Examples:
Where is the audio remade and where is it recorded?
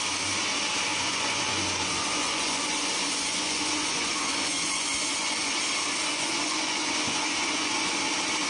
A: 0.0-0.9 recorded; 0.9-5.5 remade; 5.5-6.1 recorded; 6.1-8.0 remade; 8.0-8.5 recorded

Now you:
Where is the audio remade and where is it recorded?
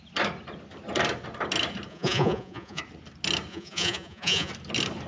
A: 0.0-1.9 recorded; 1.9-2.8 remade; 2.8-3.5 recorded; 3.5-4.5 remade; 4.5-5.1 recorded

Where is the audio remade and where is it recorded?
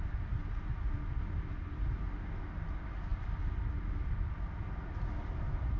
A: 0.0-5.8 recorded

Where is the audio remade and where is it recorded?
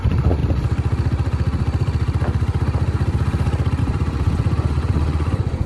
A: 0.0-0.4 remade; 0.4-3.8 recorded; 3.8-5.7 remade